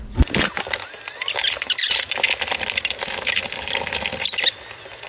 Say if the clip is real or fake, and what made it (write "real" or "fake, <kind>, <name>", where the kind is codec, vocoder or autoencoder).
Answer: real